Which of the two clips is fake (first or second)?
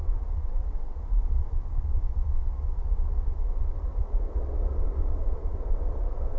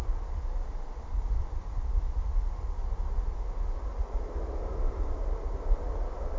first